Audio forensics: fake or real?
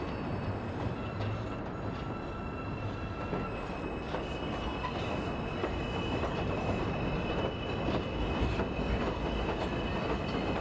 real